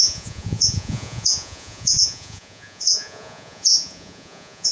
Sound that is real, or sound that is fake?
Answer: fake